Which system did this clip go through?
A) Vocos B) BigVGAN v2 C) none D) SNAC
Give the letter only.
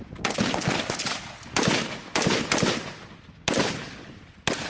C